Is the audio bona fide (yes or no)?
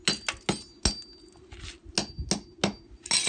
yes